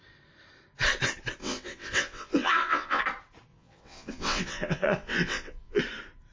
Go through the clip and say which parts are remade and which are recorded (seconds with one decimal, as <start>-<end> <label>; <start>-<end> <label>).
0.0-1.4 recorded; 1.4-3.0 remade; 3.0-3.5 recorded; 3.5-5.8 remade; 5.8-6.3 recorded